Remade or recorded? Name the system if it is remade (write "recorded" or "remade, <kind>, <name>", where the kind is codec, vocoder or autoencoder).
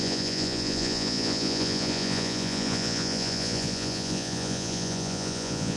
remade, vocoder, Vocos